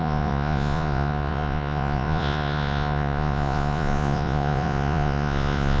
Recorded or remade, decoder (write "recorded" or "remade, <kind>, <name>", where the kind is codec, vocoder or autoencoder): remade, vocoder, Vocos